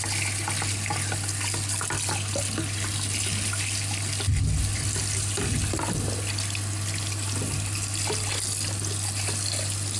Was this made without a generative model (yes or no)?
yes